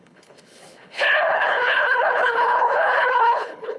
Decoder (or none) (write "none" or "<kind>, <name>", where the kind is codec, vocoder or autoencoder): codec, HILCodec